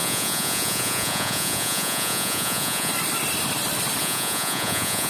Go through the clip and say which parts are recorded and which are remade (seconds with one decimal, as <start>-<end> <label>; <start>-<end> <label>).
0.0-2.9 remade; 2.9-4.0 recorded; 4.0-5.1 remade